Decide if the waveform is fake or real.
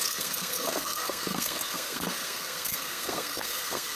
fake